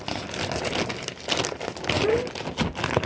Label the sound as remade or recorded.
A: recorded